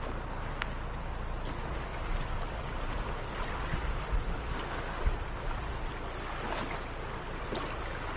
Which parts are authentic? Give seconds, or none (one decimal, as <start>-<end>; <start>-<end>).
0.0-8.2

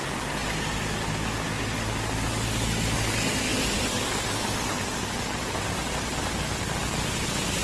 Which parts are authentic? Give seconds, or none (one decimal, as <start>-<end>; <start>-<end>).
0.0-7.6

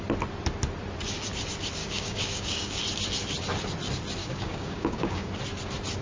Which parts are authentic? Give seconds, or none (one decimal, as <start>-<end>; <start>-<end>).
0.0-1.8; 2.8-4.2; 5.3-6.0

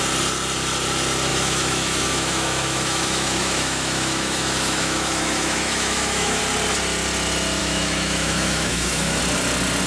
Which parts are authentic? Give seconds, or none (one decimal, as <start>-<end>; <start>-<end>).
0.0-1.3; 6.4-7.6; 9.2-9.9

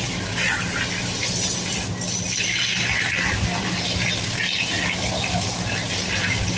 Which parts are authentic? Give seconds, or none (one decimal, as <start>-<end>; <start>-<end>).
0.0-6.6

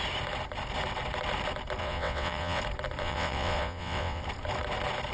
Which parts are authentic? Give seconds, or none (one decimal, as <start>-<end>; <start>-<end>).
0.0-1.8; 2.6-3.0; 4.2-5.1

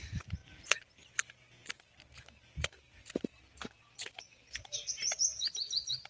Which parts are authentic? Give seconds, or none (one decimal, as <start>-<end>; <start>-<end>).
0.0-6.1

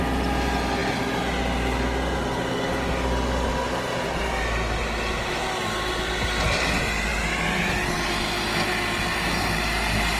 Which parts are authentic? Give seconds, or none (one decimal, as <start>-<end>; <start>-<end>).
0.0-10.2